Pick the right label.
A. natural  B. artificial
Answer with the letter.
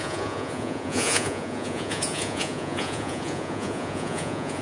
B